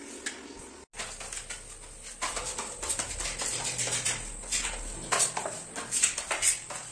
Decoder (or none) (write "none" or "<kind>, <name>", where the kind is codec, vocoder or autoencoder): none